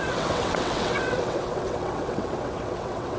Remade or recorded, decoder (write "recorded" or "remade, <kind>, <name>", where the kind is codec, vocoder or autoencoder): remade, vocoder, WaveNeXt